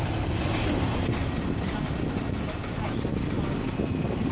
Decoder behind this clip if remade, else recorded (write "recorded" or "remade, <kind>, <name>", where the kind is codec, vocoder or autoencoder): recorded